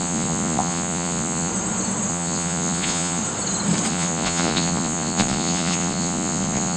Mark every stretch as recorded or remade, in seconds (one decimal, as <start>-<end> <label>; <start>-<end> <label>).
0.0-1.5 remade; 1.5-2.1 recorded; 2.1-3.2 remade; 3.2-3.9 recorded; 3.9-6.8 remade